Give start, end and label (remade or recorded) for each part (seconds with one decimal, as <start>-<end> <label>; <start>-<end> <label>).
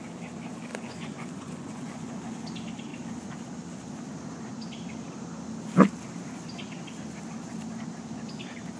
0.0-0.7 recorded; 0.7-2.1 remade; 2.1-8.8 recorded